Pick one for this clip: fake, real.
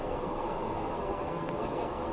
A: fake